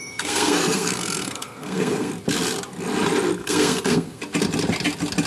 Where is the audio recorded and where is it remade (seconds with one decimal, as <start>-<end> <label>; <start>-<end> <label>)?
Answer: 0.0-2.1 remade; 2.1-3.4 recorded; 3.4-4.2 remade; 4.2-5.3 recorded